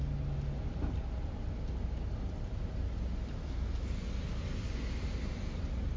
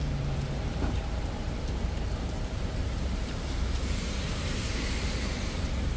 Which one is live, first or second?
first